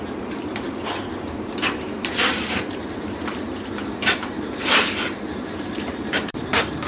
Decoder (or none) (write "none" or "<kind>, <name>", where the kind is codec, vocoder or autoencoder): vocoder, BigVGAN v2